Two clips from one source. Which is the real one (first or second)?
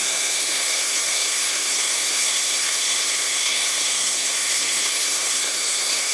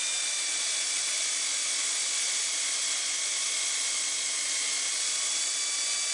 second